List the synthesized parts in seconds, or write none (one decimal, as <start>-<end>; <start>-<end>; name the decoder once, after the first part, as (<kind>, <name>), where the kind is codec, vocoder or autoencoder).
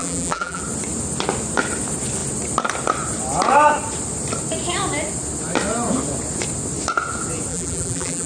0.0-0.6 (vocoder, BigVGAN v2); 7.5-8.3